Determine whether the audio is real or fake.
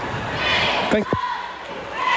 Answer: real